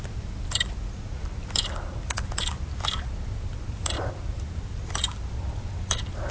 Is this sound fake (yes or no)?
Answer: no